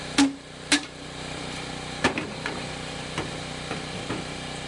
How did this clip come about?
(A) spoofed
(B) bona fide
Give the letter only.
B